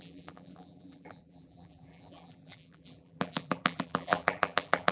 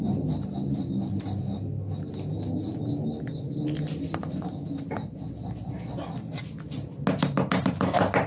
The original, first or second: second